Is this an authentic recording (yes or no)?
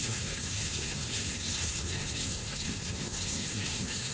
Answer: no